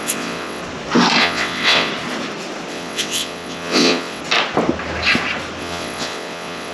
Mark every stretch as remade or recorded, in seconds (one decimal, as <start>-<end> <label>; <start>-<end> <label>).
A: 0.0-0.6 remade; 0.6-1.2 recorded; 1.2-1.9 remade; 1.9-2.7 recorded; 2.7-4.2 remade; 4.2-5.6 recorded; 5.6-6.7 remade